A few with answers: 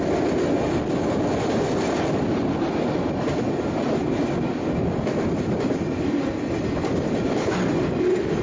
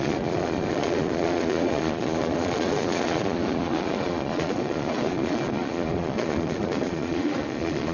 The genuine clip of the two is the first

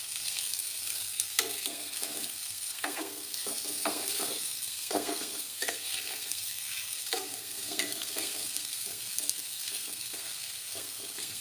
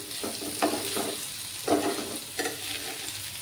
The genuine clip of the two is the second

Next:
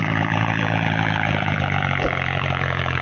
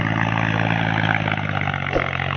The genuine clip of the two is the second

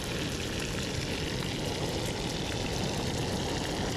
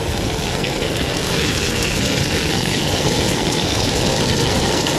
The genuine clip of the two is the first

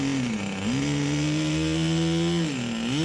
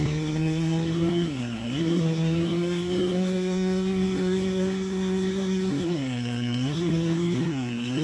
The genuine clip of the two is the first